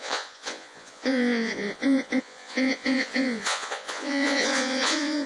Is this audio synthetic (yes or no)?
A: yes